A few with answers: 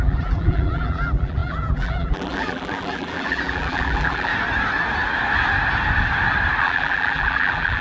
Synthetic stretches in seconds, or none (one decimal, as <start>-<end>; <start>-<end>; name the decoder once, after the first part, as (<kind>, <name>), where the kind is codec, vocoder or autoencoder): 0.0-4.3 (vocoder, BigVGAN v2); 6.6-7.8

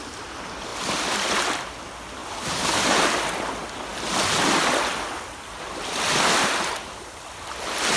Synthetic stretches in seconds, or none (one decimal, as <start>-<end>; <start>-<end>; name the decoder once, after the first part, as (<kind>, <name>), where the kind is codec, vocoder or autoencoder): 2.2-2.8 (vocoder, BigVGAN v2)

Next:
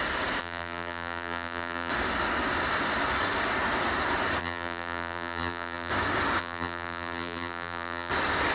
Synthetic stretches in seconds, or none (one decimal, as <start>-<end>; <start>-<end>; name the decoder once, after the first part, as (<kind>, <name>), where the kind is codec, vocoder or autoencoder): 0.4-1.9 (vocoder, BigVGAN v2); 4.4-5.9; 6.4-8.1